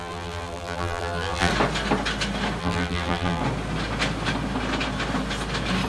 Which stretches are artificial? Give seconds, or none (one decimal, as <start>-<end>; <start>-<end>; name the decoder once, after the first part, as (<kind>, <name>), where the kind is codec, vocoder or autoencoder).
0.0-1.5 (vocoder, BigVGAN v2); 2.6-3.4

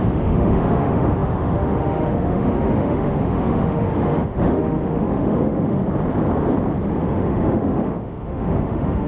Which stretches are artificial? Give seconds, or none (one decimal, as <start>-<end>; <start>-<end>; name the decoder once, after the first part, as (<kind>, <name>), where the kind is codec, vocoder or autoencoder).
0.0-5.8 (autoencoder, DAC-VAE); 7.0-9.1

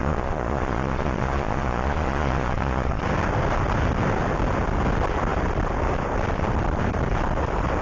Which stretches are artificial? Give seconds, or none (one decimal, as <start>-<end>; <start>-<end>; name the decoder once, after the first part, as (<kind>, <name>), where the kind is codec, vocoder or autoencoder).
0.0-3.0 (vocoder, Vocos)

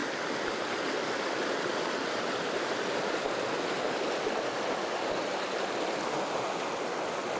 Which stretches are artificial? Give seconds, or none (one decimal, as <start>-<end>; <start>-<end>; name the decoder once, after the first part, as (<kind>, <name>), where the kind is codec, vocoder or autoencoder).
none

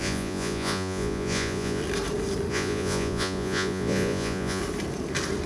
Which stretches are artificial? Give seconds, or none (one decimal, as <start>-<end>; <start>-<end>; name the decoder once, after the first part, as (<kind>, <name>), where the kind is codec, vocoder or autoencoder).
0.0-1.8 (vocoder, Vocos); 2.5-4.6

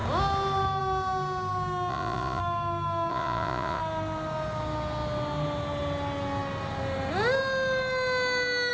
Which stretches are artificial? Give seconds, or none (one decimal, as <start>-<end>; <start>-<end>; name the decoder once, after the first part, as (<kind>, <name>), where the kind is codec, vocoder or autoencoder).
1.9-2.4 (vocoder, Vocos); 3.1-3.8

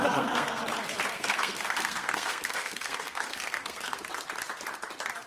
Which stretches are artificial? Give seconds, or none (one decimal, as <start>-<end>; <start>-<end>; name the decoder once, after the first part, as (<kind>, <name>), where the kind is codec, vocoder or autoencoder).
0.0-0.6 (codec, SNAC); 1.1-4.0

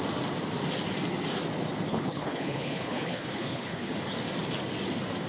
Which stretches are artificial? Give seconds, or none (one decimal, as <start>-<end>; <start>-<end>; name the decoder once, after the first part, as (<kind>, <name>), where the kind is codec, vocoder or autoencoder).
1.9-3.9 (codec, HILCodec)